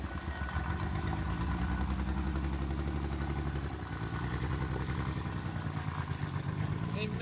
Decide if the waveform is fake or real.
real